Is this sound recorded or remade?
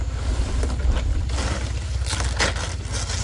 recorded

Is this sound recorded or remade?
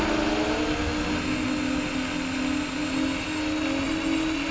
recorded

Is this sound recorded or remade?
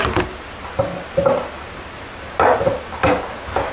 recorded